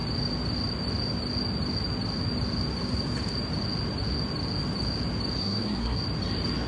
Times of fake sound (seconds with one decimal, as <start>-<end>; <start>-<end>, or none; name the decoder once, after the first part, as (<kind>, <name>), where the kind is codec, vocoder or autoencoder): 5.4-6.0 (codec, SNAC)